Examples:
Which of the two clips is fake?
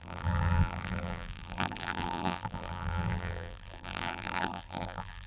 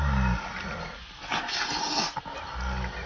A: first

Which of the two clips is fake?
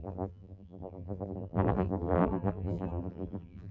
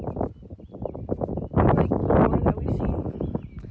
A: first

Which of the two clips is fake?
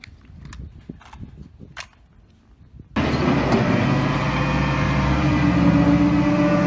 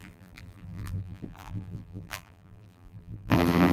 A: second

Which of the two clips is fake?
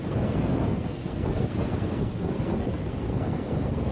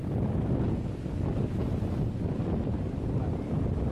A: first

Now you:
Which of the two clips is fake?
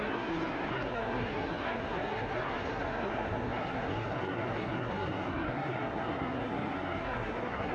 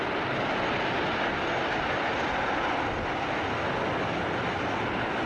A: first